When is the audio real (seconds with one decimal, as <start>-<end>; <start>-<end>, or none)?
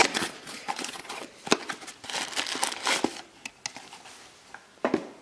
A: 1.3-5.2